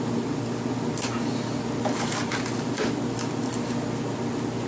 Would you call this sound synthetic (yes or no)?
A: no